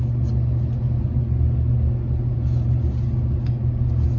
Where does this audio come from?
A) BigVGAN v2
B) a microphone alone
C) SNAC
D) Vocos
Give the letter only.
B